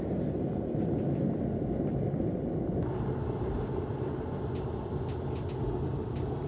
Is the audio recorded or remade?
recorded